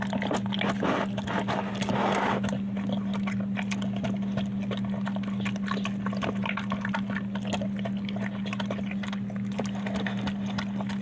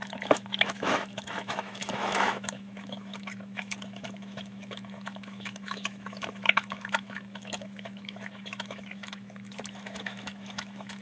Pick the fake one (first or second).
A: second